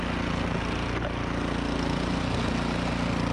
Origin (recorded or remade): recorded